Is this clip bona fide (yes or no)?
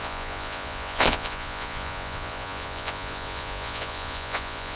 no